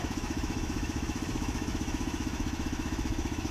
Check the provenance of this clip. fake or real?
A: fake